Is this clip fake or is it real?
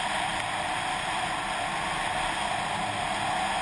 real